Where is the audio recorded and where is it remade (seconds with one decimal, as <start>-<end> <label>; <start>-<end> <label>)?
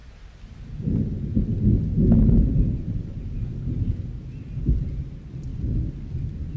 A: 0.0-6.6 recorded